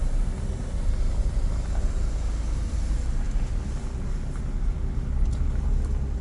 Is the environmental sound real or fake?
real